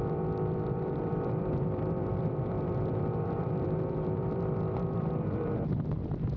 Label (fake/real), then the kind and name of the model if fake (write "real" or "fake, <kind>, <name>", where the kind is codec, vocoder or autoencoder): fake, vocoder, BigVGAN v2